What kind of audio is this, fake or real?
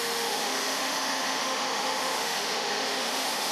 fake